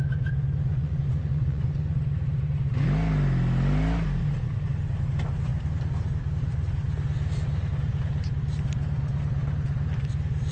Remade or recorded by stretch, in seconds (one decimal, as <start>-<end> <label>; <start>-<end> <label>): 0.0-0.7 recorded; 0.7-2.0 remade; 2.0-10.5 recorded